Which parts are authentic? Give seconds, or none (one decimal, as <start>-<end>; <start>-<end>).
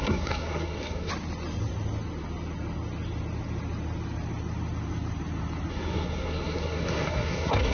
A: 1.1-5.7